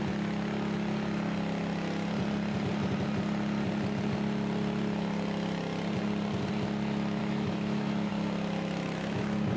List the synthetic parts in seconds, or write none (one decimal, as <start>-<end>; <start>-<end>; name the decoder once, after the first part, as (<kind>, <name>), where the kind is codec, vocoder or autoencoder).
7.2-8.1 (autoencoder, DAC-VAE)